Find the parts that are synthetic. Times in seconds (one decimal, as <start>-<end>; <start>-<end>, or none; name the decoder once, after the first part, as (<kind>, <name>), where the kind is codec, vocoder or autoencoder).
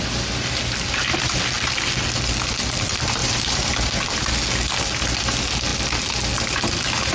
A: 3.2-3.9 (vocoder, BigVGAN v2)